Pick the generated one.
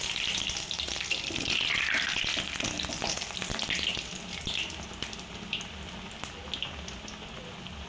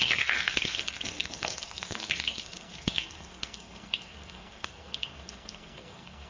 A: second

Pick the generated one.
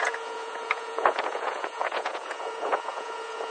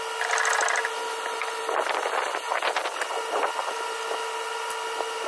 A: first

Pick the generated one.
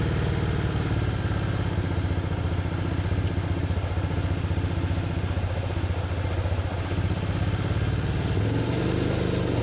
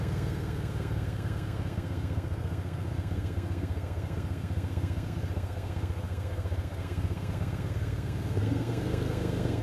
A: second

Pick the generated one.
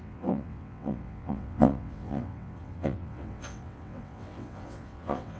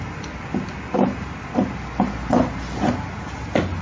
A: first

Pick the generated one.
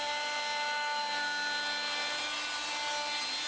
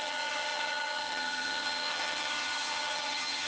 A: second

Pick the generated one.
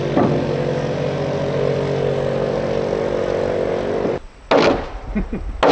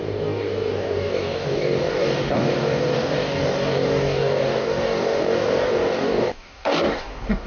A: second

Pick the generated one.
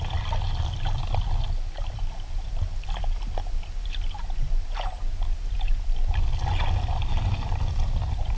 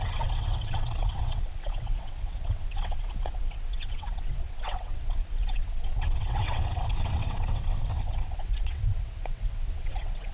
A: second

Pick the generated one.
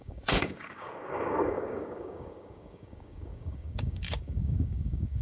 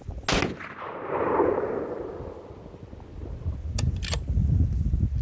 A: first